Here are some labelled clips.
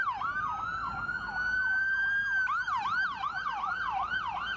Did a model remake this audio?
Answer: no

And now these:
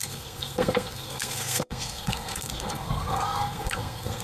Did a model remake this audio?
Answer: yes